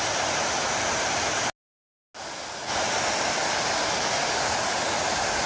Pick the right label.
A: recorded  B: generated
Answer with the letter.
A